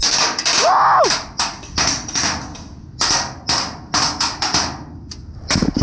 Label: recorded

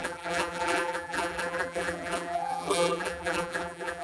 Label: remade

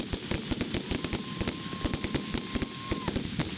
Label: recorded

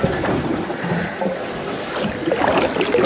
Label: recorded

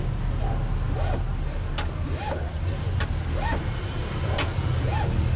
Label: recorded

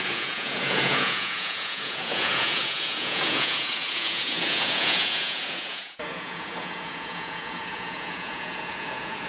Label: remade